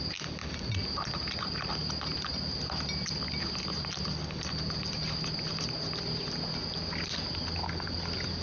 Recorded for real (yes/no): yes